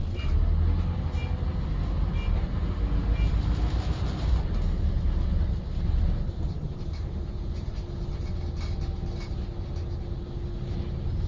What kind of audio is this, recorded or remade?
recorded